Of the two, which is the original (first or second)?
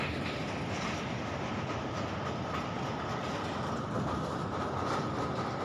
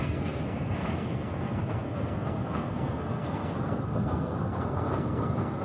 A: first